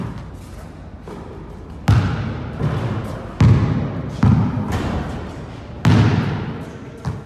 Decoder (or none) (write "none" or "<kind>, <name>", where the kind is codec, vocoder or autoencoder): none